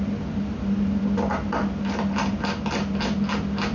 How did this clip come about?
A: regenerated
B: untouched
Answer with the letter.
B